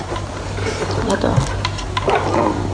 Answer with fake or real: real